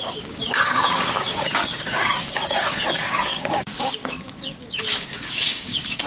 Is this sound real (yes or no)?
no